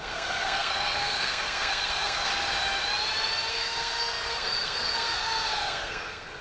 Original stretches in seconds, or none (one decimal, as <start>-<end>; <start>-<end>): 2.3-3.5